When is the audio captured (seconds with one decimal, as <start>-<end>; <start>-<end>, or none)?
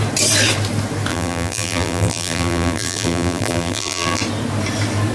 0.0-1.1; 4.2-5.1